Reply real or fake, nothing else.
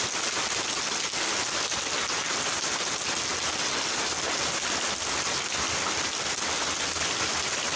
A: real